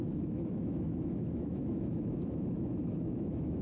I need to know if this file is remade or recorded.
remade